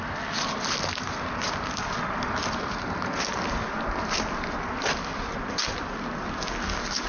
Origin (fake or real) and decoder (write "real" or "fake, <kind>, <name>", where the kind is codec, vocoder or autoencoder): real